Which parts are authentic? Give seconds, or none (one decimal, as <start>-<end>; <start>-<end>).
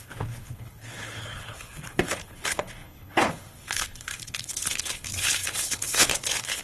none